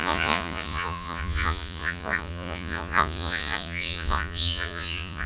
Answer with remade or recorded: remade